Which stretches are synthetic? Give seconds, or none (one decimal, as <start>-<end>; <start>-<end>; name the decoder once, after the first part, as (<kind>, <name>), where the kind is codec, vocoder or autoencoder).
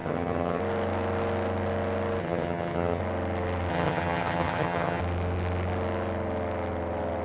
0.0-0.6 (vocoder, HiFi-GAN); 2.2-3.0; 3.7-5.0